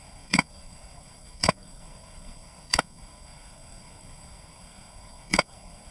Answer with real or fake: fake